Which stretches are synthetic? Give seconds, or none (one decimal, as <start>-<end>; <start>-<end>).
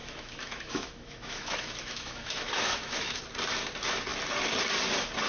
0.0-3.2